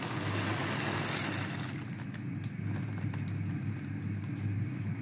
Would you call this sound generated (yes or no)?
no